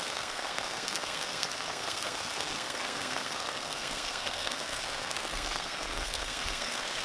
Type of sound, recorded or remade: remade